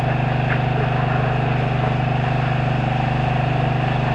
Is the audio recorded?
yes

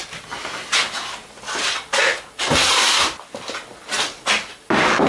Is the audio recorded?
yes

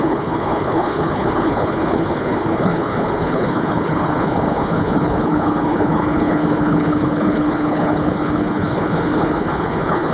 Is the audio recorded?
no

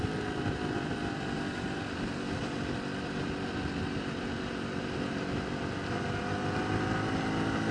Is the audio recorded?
yes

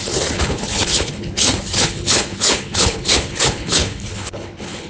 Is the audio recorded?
no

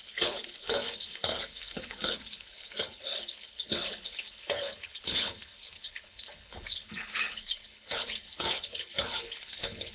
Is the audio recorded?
no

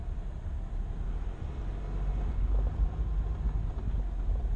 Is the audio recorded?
yes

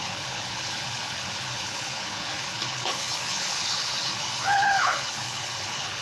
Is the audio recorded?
no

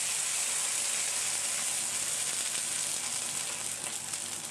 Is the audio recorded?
yes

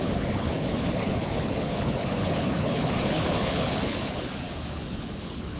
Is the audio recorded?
no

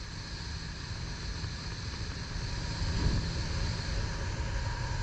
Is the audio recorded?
yes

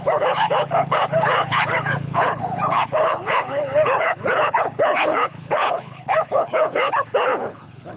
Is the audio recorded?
no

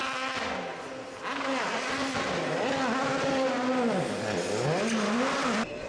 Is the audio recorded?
yes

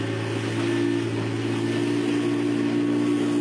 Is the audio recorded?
yes